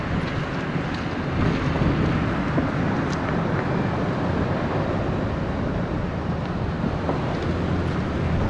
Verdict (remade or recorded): recorded